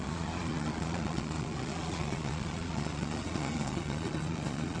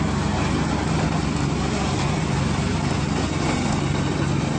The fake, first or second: first